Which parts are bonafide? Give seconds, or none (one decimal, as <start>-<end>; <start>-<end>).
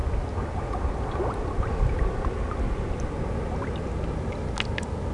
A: 0.0-5.1